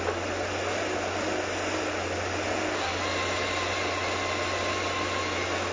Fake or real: real